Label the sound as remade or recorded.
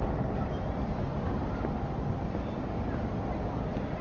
recorded